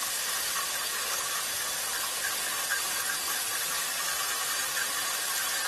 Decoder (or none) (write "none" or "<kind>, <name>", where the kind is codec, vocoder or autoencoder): none